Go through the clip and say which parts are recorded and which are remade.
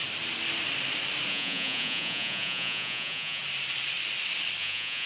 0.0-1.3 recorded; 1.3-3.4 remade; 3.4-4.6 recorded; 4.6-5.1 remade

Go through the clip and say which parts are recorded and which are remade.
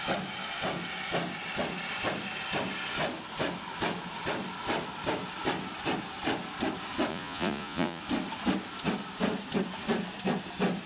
0.0-7.1 recorded; 7.1-8.0 remade; 8.0-10.9 recorded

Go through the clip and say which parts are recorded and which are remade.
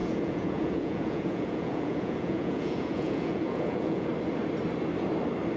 0.0-4.1 remade; 4.1-5.6 recorded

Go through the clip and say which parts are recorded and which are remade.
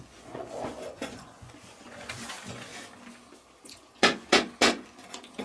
0.0-2.7 remade; 2.7-3.6 recorded; 3.6-5.4 remade